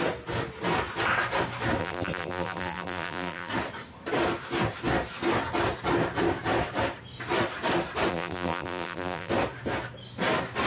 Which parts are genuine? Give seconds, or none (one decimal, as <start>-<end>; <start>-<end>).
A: 0.0-1.8; 3.5-8.1; 9.3-10.7